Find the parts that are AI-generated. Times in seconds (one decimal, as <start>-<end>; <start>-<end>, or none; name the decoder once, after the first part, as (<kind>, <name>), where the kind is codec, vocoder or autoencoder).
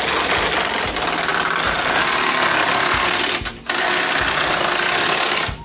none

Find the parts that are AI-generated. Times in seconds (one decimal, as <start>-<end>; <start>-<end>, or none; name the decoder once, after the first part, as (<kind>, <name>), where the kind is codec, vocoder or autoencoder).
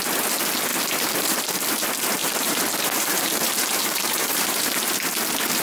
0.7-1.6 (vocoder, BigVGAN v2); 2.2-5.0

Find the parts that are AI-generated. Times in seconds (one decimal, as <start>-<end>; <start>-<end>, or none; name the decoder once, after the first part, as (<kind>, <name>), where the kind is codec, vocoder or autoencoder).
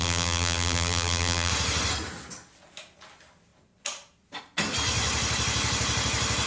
0.0-1.5 (vocoder, BigVGAN v2)